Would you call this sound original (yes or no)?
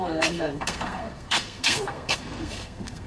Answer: no